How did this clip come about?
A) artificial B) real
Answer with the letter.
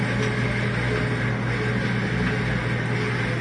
B